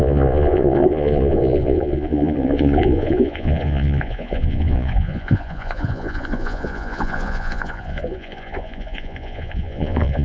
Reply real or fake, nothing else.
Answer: fake